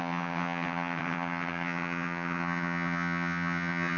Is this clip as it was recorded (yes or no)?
no